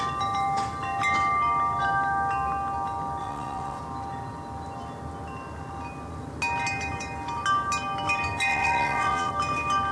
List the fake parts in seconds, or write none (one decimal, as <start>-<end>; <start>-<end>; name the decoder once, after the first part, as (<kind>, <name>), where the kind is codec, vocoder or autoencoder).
3.2-3.8 (vocoder, WaveNeXt); 8.5-9.3